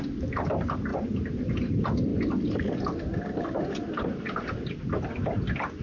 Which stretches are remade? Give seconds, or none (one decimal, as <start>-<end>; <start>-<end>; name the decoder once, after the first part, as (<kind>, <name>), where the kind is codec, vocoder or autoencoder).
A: 0.9-1.7 (vocoder, BigVGAN v2)